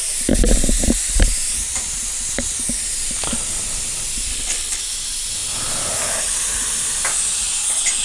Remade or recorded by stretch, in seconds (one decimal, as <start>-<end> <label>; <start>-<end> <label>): 0.0-4.3 recorded; 4.3-4.8 remade; 4.8-8.0 recorded